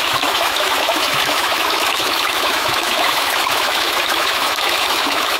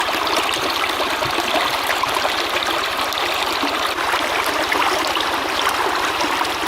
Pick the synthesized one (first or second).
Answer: first